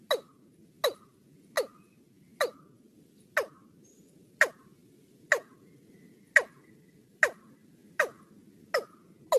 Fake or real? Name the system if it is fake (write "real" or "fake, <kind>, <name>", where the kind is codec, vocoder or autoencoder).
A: real